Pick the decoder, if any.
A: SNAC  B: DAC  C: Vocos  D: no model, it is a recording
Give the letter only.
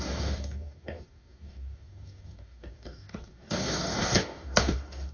B